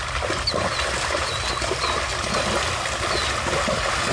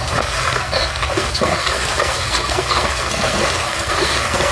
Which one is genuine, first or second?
first